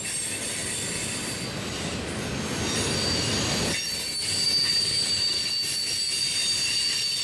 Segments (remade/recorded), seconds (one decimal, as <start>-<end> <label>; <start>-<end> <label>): 0.0-7.2 recorded